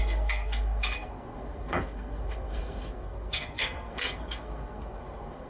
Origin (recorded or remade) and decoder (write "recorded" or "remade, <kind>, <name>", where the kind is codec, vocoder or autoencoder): remade, codec, SNAC